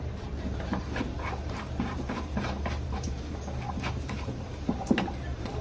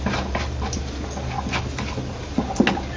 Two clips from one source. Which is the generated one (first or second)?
first